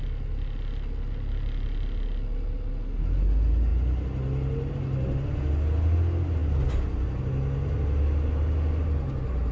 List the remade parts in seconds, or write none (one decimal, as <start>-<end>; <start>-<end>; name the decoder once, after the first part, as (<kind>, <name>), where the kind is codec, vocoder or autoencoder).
none